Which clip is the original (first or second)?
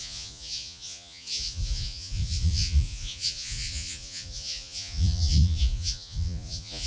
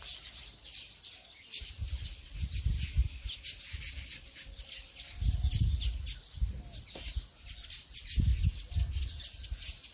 second